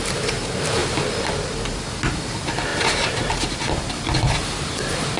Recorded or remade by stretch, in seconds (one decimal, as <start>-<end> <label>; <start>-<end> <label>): 0.0-5.2 recorded